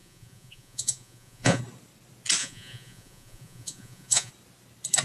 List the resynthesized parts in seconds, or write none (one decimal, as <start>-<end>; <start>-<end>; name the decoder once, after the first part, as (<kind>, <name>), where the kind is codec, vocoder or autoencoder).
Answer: 0.0-1.6 (vocoder, Vocos); 2.4-4.3